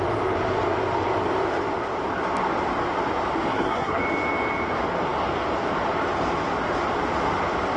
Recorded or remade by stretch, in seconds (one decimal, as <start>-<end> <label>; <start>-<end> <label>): 0.0-3.5 recorded; 3.5-4.0 remade; 4.0-7.8 recorded